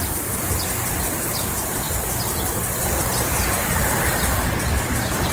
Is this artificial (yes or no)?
no